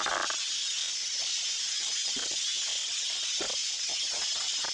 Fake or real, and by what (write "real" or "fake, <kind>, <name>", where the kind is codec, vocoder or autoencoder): real